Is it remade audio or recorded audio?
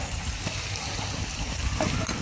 recorded